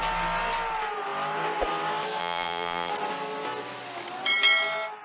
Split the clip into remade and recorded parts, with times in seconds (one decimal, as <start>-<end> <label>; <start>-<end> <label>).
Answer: 0.0-2.2 recorded; 2.2-2.9 remade; 2.9-5.0 recorded